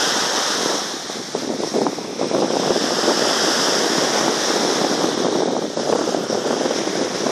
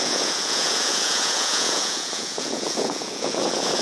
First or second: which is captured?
first